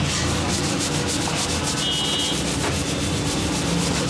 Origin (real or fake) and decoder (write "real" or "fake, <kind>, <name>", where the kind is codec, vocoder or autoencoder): real